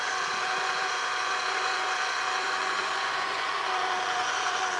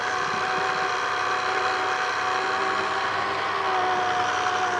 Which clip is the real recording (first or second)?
second